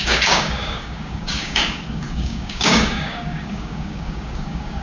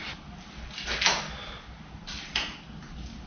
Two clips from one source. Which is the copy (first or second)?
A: first